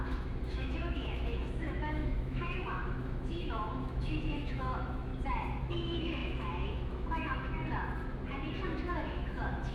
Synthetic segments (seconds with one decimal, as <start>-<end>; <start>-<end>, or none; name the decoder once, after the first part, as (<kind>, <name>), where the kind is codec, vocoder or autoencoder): 0.0-5.1 (autoencoder, DAC-VAE); 5.7-7.6; 8.6-9.7